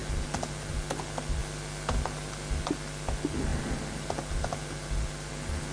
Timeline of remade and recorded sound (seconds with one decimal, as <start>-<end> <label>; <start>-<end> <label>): 0.0-5.7 recorded